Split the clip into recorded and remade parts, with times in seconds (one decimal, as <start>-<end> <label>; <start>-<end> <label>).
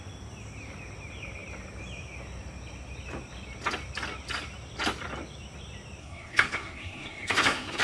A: 0.0-6.0 recorded; 6.0-7.8 remade